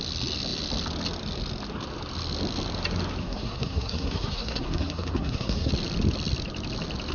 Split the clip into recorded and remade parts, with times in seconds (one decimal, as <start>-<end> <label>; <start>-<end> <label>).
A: 0.0-3.2 recorded; 3.2-5.7 remade; 5.7-7.1 recorded